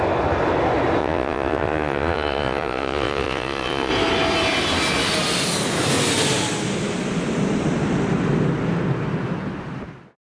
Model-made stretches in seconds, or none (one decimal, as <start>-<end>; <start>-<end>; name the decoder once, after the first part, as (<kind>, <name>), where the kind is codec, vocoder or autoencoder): 1.0-3.9 (vocoder, Vocos)